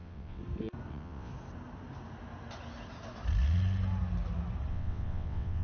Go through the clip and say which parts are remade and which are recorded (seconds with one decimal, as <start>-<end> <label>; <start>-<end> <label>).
0.0-0.4 remade; 0.4-0.9 recorded; 0.9-1.3 remade; 1.3-4.7 recorded; 4.7-5.6 remade